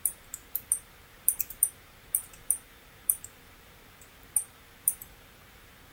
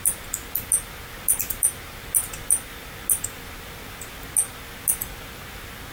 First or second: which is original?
second